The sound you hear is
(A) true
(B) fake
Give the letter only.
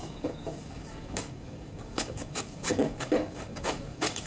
B